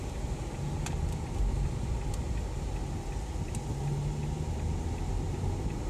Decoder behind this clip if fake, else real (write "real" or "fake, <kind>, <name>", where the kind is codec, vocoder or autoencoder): real